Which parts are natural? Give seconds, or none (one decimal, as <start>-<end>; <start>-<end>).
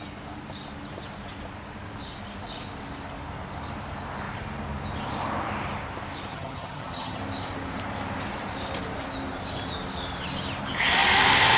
0.0-6.3; 7.2-11.6